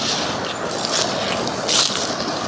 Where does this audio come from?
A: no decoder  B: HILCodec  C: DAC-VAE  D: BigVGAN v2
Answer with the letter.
A